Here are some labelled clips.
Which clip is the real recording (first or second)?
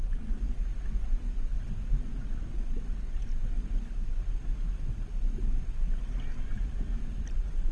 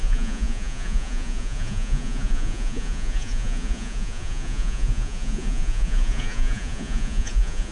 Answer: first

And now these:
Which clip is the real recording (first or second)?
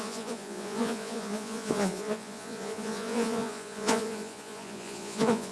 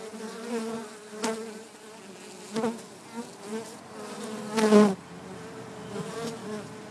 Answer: second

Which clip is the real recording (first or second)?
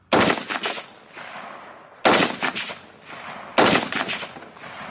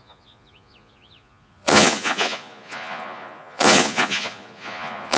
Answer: first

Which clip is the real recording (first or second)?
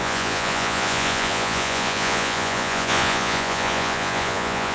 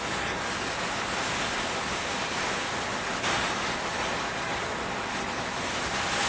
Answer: second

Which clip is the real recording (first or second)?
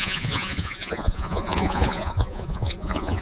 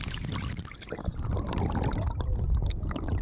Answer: second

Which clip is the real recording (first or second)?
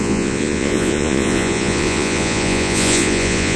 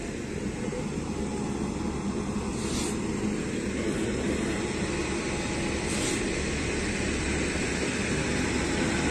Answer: second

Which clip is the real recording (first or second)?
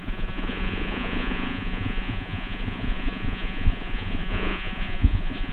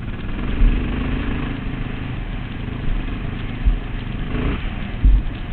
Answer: second